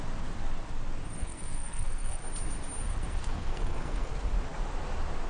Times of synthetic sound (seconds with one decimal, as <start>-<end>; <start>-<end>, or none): 1.2-2.2; 2.9-4.1